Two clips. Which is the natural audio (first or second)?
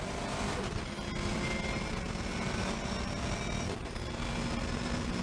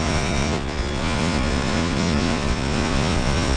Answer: first